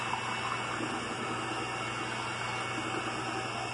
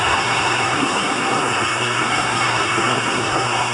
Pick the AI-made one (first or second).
second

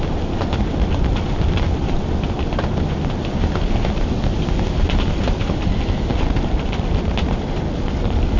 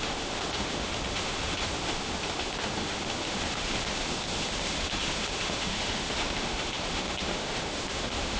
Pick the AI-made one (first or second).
second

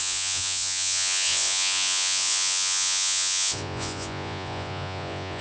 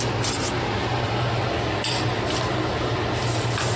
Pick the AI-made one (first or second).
first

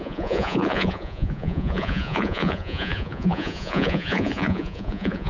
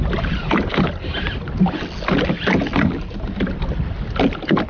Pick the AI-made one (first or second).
first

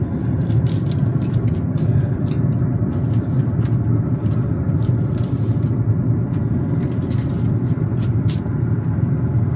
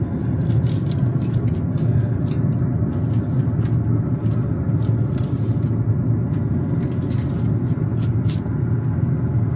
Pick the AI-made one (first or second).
first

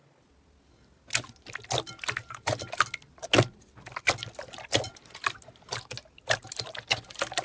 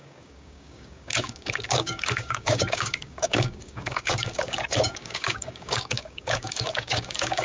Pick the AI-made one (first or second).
second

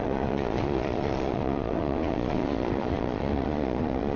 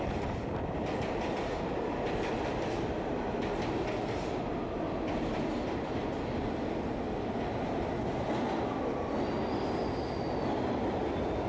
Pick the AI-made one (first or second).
first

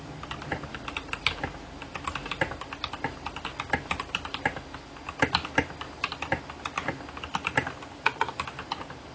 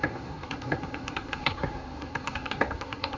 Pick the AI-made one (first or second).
second